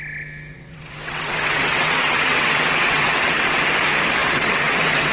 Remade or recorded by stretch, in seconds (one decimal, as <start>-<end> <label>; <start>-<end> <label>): 0.0-0.5 recorded; 0.5-3.6 remade; 3.6-4.2 recorded; 4.2-5.1 remade